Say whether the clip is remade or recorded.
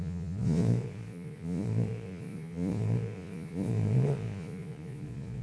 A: remade